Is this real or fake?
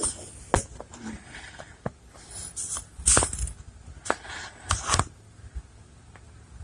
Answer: real